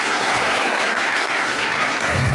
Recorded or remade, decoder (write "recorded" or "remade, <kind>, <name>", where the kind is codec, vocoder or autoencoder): remade, codec, SNAC